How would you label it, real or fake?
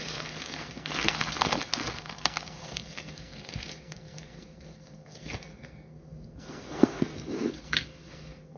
fake